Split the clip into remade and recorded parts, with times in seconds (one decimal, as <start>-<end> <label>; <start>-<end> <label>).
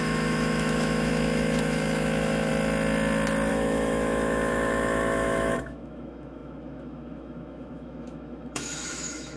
0.0-2.5 remade; 2.5-3.5 recorded; 3.5-9.4 remade